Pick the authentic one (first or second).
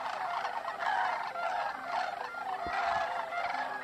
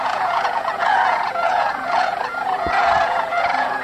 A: first